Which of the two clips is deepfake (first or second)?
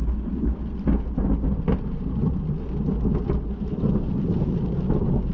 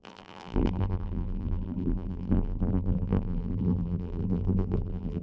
second